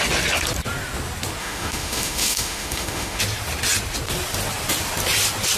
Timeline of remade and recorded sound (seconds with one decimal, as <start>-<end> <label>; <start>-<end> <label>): 0.0-1.4 recorded; 1.4-3.2 remade; 3.2-5.6 recorded